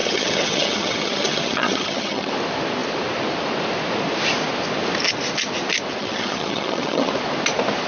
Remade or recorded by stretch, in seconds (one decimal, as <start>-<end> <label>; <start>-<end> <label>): 0.0-2.3 remade; 2.3-6.0 recorded; 6.0-7.1 remade; 7.1-7.9 recorded